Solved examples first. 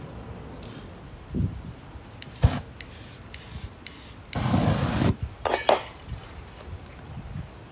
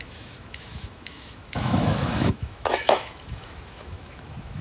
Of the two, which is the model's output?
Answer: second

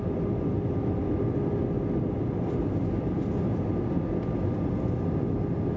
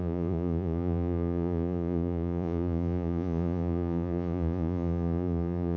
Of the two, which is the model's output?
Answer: second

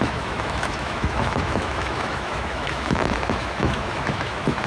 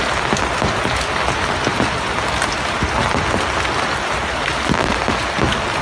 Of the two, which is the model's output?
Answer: first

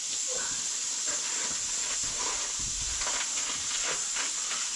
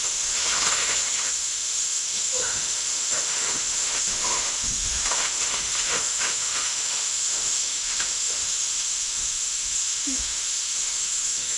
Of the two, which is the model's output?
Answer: second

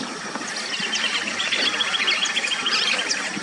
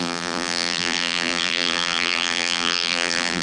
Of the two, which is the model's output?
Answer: second